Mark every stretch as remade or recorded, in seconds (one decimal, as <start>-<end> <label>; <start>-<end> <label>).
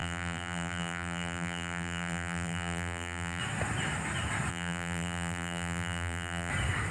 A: 0.0-3.4 remade; 3.4-4.5 recorded; 4.5-6.5 remade; 6.5-6.9 recorded